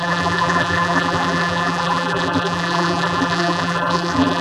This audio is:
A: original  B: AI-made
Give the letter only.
B